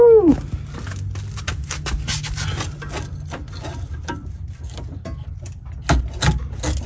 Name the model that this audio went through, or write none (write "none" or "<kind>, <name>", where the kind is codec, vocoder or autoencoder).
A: none